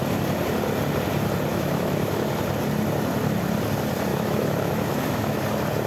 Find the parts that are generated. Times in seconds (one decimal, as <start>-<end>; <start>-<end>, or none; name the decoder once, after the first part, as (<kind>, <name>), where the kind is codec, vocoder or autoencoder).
1.5-2.3 (autoencoder, DAC-VAE); 4.1-5.4